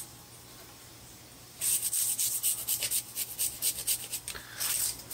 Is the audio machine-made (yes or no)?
no